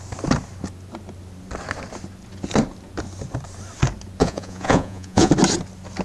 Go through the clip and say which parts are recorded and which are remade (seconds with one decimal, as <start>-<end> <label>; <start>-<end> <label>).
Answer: 0.0-4.2 recorded; 4.2-5.3 remade; 5.3-6.0 recorded